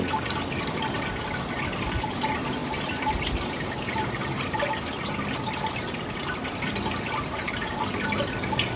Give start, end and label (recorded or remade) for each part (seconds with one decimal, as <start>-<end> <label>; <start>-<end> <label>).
0.0-2.6 recorded; 2.6-5.0 remade; 5.0-8.8 recorded